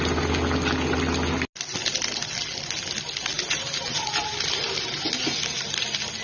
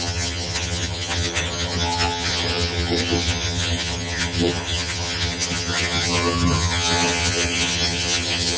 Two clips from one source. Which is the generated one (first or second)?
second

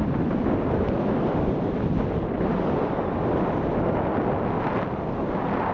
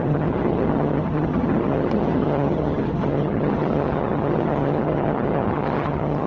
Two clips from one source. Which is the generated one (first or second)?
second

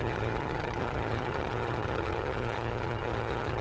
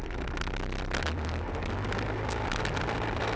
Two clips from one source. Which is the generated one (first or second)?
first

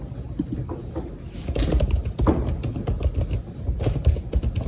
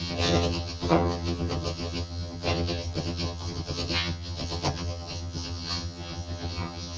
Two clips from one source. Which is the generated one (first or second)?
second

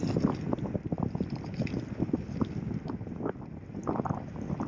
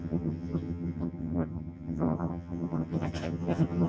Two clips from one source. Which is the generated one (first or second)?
second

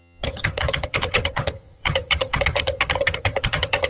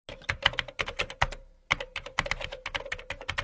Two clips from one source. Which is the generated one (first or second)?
first